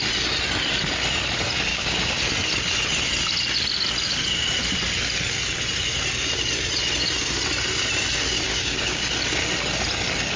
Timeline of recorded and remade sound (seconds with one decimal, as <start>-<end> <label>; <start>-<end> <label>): 0.0-1.7 recorded; 1.7-2.2 remade; 2.2-8.5 recorded; 8.5-9.1 remade; 9.1-10.4 recorded